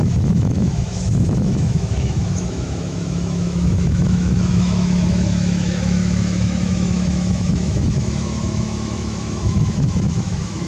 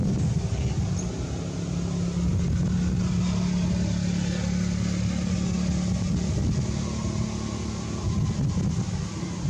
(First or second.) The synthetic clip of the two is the first